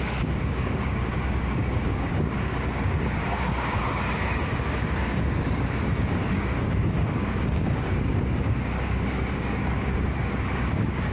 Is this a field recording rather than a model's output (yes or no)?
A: no